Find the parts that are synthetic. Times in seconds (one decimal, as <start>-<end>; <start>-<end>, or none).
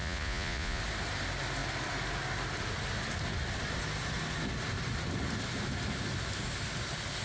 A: 0.0-0.8